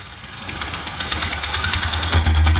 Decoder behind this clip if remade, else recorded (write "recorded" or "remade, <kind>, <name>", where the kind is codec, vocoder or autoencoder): remade, codec, SNAC